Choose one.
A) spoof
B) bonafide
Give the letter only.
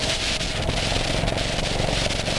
B